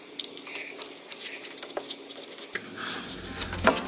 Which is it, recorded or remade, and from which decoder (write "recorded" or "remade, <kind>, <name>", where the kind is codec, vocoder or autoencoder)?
recorded